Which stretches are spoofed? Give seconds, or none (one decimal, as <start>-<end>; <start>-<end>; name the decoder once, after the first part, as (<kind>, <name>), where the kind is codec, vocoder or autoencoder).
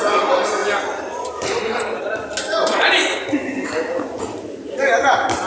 none